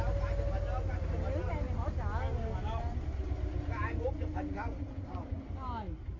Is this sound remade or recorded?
recorded